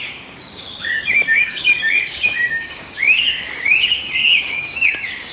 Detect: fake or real fake